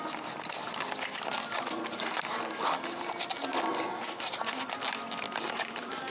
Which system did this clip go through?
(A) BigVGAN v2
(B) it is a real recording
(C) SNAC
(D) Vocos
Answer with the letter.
B